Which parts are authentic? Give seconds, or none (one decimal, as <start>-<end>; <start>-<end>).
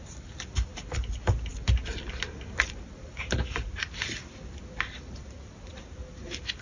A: 0.0-6.6